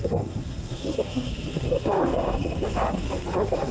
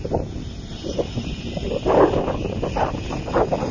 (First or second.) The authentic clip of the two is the second